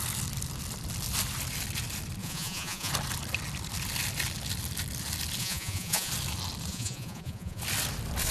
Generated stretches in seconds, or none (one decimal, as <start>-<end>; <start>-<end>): 2.2-2.9; 5.4-6.1; 6.7-7.6